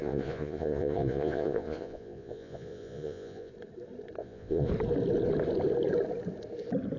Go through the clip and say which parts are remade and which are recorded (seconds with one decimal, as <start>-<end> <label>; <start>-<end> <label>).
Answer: 0.0-3.5 remade; 3.5-4.2 recorded; 4.2-4.7 remade; 4.7-7.0 recorded